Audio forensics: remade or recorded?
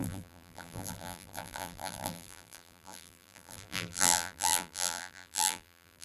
remade